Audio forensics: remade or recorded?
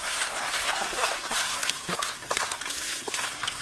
remade